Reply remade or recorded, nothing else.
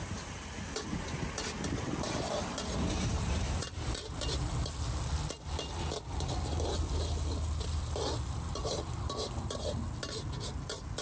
recorded